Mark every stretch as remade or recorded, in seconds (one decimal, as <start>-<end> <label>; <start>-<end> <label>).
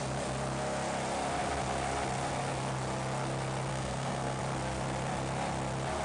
0.0-3.7 recorded; 3.7-4.4 remade; 4.4-6.0 recorded